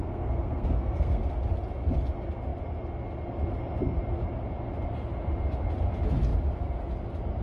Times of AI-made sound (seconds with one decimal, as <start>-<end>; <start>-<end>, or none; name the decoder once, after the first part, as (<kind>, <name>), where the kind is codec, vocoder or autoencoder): 0.0-1.2 (codec, SNAC)

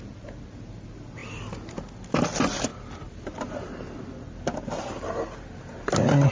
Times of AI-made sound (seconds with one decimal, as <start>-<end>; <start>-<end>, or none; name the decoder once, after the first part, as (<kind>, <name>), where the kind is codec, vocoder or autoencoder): none

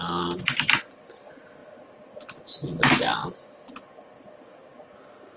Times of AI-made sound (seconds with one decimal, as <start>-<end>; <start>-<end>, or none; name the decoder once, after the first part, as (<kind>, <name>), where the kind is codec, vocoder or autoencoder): none

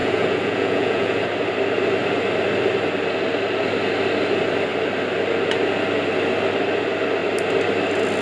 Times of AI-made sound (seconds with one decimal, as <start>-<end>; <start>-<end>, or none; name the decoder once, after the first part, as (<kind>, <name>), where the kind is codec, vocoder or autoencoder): 0.0-1.2 (vocoder, Vocos)

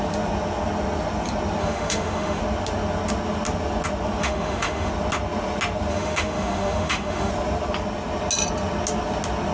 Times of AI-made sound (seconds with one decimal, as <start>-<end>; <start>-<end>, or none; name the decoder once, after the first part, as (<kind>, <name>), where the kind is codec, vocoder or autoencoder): 1.6-2.4 (autoencoder, DAC-VAE); 4.2-4.9; 5.9-7.3

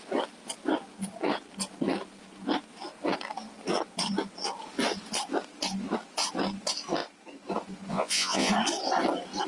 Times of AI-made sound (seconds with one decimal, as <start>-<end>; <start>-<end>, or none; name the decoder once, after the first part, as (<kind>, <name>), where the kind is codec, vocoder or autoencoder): 7.9-8.5 (vocoder, Vocos)

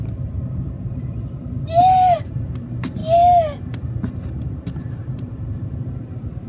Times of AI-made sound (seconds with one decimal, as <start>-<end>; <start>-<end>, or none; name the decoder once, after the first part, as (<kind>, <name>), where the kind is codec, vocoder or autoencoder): 0.0-3.0 (vocoder, BigVGAN v2); 4.4-6.5

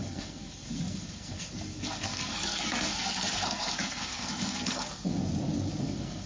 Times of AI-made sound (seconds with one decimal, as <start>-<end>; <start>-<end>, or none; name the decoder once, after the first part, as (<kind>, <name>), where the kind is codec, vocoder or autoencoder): 0.0-5.2 (codec, SNAC); 5.8-6.3